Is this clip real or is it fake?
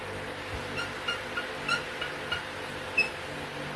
real